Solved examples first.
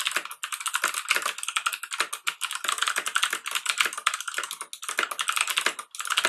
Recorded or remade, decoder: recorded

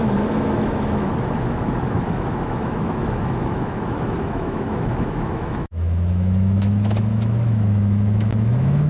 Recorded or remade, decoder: remade, autoencoder, DAC-VAE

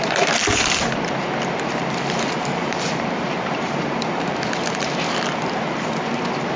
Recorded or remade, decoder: remade, vocoder, BigVGAN v2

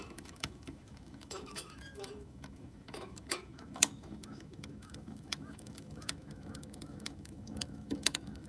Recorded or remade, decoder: remade, autoencoder, DAC-VAE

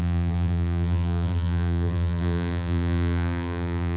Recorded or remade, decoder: remade, vocoder, BigVGAN v2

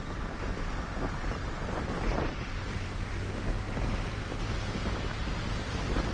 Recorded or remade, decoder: recorded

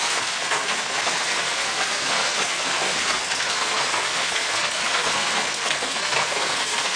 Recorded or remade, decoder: remade, codec, SNAC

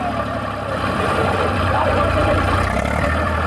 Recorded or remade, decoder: remade, vocoder, BigVGAN v2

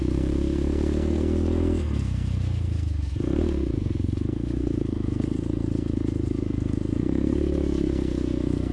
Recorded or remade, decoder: remade, codec, SNAC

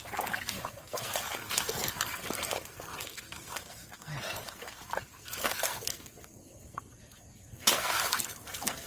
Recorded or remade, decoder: remade, codec, SNAC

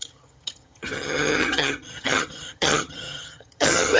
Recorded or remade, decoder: remade, vocoder, HiFi-GAN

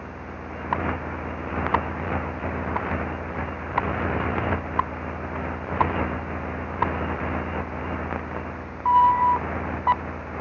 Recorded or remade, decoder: recorded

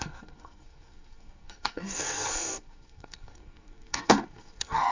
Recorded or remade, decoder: remade, codec, SNAC